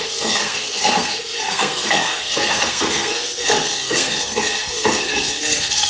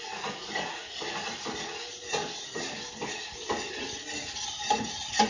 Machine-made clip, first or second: first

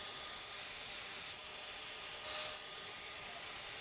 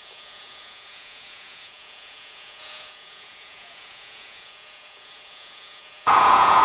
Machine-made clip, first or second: second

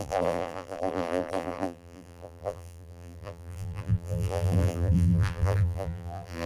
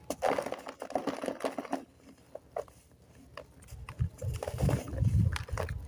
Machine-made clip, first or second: first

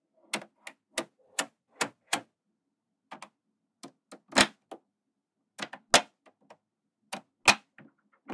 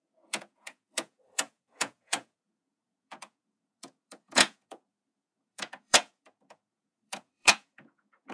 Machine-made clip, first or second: second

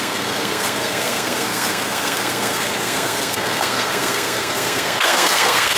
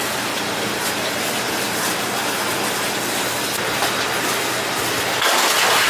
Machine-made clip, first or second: first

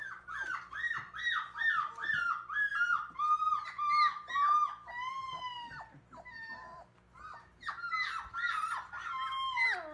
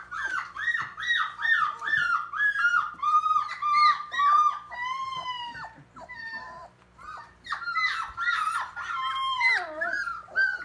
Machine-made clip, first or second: second